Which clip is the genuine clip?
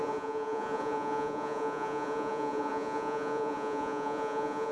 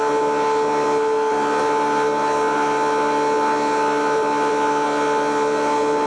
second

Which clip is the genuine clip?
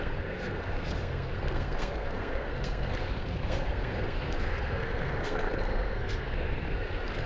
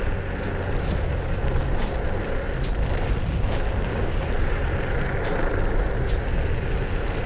second